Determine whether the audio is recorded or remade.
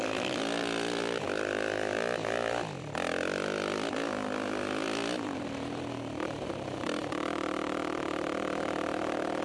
recorded